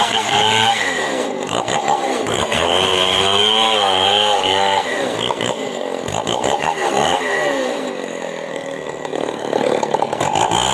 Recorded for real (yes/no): no